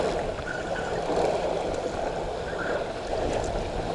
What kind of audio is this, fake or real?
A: real